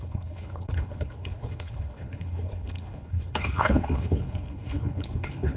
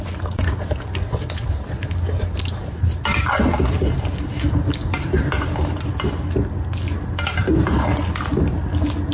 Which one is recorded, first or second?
second